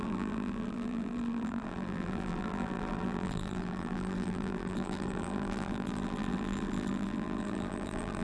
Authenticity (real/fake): fake